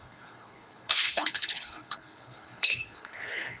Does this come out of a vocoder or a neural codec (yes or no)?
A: yes